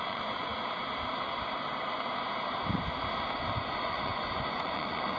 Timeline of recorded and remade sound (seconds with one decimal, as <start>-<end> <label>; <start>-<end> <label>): 0.0-0.5 remade; 0.5-3.6 recorded; 3.6-5.2 remade